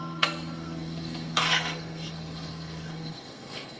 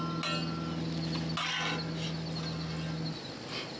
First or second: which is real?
second